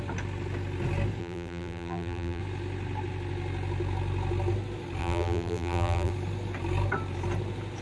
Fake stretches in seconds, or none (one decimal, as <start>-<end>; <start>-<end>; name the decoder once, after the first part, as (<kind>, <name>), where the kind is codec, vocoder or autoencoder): 1.2-2.4 (vocoder, BigVGAN v2); 5.0-6.1